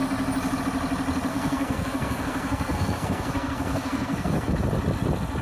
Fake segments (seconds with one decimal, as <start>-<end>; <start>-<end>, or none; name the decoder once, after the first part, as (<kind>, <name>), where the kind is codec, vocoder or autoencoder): 1.3-4.5 (codec, SNAC)